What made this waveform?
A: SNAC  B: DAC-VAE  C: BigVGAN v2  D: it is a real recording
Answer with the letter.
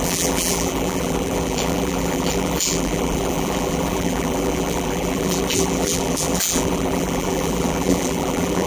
C